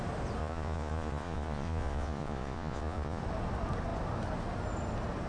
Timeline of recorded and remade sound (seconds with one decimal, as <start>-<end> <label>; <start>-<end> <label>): 0.0-0.4 recorded; 0.4-3.2 remade; 3.2-5.3 recorded